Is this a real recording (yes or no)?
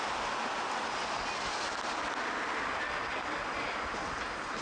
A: yes